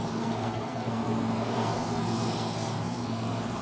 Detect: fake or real fake